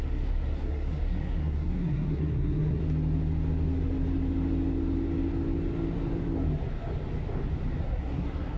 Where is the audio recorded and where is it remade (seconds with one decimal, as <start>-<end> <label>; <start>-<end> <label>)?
0.0-2.8 remade; 2.8-7.8 recorded; 7.8-8.6 remade

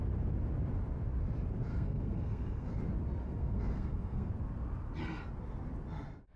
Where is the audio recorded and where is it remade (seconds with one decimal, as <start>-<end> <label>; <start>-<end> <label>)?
0.0-1.7 recorded; 1.7-2.8 remade; 2.8-3.2 recorded; 3.2-4.3 remade; 4.3-6.4 recorded

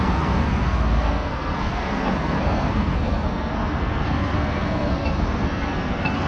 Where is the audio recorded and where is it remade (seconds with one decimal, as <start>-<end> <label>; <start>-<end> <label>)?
0.0-6.3 remade

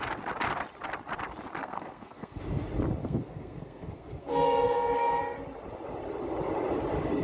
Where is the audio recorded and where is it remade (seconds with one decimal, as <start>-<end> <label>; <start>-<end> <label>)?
0.0-1.6 recorded; 1.6-2.4 remade; 2.4-3.0 recorded; 3.0-5.2 remade; 5.2-7.2 recorded

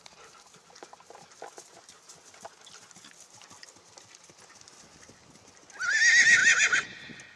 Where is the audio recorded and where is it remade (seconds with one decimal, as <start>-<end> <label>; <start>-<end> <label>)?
0.0-7.4 recorded

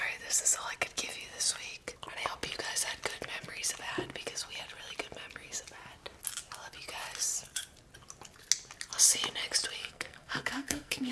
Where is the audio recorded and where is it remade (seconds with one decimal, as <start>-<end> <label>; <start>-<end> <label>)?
0.0-9.8 recorded; 9.8-11.1 remade